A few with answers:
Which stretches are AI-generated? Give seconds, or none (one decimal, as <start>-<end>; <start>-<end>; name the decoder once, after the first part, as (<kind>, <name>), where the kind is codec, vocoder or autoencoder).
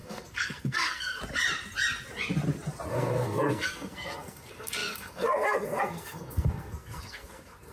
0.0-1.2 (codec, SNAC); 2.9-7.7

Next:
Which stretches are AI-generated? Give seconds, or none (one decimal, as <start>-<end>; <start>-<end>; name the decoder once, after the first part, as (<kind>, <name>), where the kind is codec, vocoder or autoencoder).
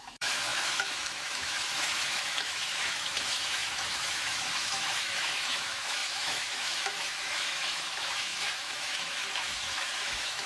0.0-10.5 (autoencoder, DAC-VAE)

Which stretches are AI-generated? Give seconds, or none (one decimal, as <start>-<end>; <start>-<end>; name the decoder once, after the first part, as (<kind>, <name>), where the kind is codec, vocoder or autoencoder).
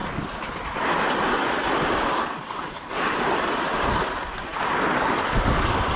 none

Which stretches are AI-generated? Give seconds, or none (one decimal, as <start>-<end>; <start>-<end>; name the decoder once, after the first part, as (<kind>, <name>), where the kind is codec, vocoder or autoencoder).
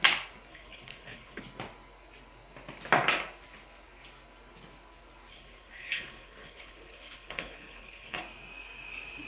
0.5-1.4 (codec, HILCodec); 5.3-8.2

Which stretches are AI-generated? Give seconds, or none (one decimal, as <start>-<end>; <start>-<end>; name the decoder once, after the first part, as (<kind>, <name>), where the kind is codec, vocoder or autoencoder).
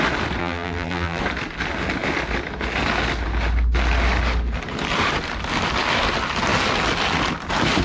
0.4-1.2 (vocoder, BigVGAN v2)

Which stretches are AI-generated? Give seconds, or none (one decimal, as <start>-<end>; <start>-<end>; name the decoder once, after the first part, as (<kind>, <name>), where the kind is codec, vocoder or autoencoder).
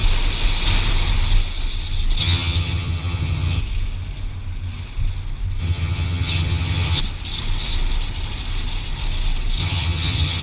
2.2-3.6 (vocoder, HiFi-GAN); 5.6-7.0; 9.6-10.4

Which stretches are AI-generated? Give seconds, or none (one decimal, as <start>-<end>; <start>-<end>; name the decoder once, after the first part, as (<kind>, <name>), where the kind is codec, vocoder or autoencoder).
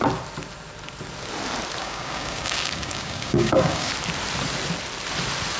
1.8-3.9 (codec, DAC)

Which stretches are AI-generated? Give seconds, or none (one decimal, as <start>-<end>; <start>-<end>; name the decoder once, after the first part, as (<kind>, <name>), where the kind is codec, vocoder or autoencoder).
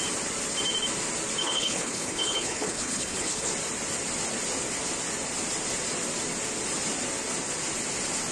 1.4-3.5 (codec, HILCodec)